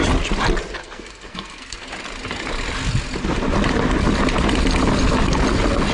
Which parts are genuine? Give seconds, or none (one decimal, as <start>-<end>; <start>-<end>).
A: 0.0-0.8; 1.9-5.9